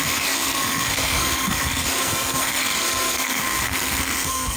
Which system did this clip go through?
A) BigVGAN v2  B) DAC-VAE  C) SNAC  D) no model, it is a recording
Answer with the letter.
C